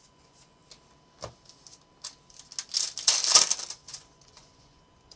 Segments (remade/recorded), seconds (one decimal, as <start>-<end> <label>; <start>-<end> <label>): 0.0-0.6 remade; 0.6-3.7 recorded; 3.7-5.2 remade